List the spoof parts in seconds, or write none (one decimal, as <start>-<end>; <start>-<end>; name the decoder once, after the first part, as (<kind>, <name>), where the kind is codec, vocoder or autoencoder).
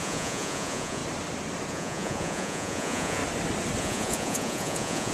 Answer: 0.0-1.0 (vocoder, Vocos); 1.7-3.2; 3.8-5.1